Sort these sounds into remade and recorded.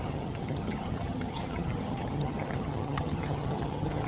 remade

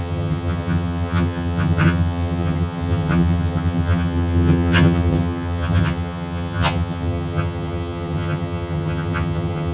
remade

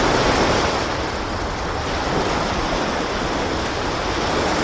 recorded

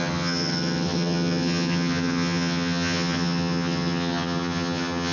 remade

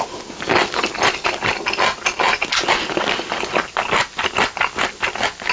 recorded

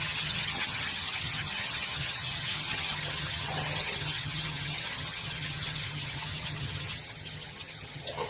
remade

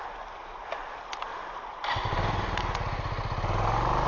recorded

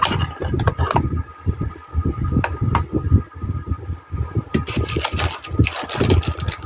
recorded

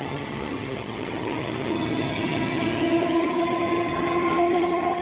remade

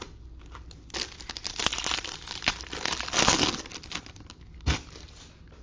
recorded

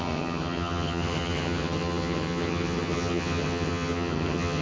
remade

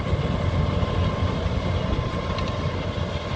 recorded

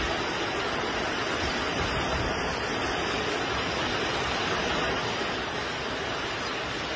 recorded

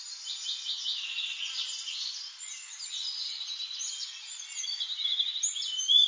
recorded